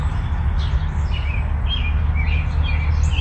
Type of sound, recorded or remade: recorded